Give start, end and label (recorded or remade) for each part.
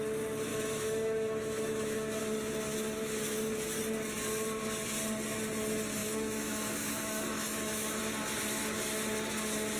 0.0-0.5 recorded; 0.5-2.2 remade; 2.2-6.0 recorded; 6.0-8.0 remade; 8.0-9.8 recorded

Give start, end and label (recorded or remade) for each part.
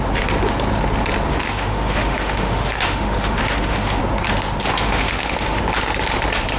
0.0-1.3 recorded; 1.3-4.0 remade; 4.0-4.6 recorded; 4.6-5.6 remade; 5.6-6.6 recorded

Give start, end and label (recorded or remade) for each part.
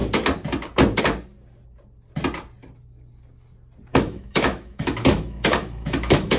0.0-3.9 recorded; 3.9-6.4 remade